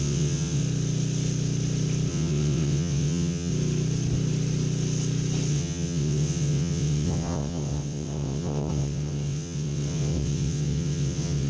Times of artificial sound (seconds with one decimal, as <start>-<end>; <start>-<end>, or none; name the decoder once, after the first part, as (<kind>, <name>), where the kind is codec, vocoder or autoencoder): 0.0-0.6 (vocoder, WaveNeXt); 2.1-3.5; 5.5-11.5